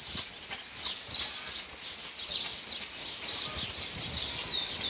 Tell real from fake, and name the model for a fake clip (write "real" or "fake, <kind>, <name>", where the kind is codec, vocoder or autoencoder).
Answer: real